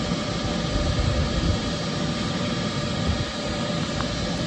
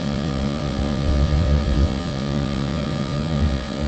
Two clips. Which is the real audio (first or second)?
first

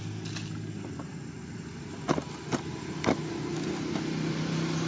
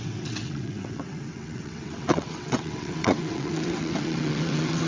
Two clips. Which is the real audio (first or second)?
first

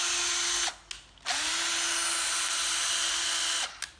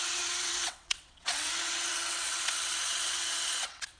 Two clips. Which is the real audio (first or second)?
first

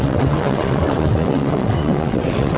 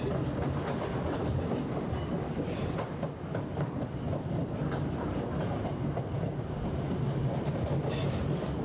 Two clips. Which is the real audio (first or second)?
second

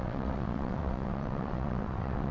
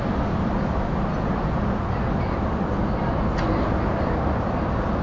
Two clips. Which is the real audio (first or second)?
second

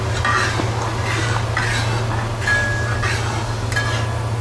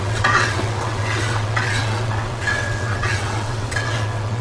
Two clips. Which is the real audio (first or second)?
first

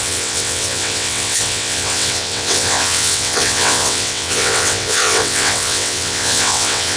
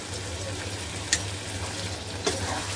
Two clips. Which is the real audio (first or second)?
second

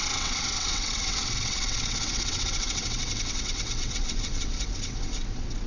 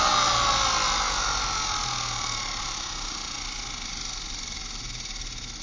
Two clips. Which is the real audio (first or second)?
second